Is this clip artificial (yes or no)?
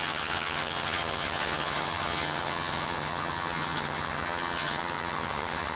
yes